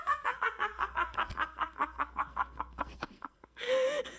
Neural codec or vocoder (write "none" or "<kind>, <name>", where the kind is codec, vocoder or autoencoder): codec, SNAC